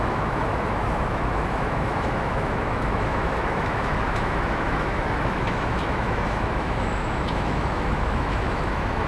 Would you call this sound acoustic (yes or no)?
no